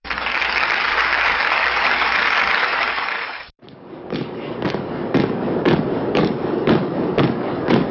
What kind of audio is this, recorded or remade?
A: remade